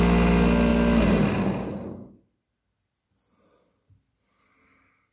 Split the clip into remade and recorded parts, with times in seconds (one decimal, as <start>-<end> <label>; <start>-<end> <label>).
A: 0.0-5.1 recorded